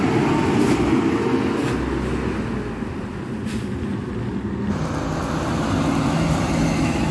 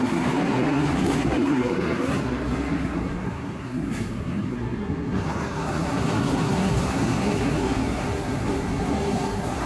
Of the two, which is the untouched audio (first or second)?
first